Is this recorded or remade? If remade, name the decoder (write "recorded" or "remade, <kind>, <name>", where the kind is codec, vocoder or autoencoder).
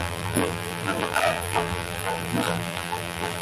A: remade, vocoder, BigVGAN v2